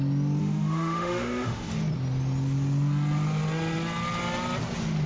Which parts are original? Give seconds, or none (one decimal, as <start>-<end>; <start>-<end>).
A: 0.0-0.4; 1.7-5.1